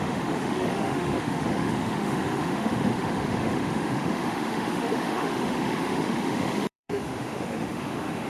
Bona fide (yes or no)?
no